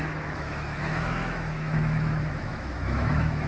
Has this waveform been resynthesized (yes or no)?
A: yes